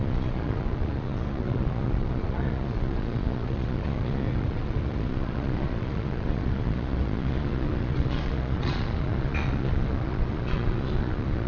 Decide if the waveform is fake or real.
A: fake